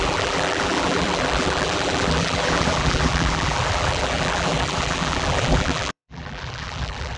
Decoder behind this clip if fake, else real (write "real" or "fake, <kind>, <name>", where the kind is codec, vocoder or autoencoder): fake, vocoder, BigVGAN v2